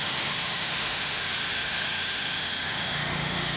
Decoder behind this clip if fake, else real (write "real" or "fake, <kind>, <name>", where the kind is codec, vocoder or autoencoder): fake, autoencoder, DAC-VAE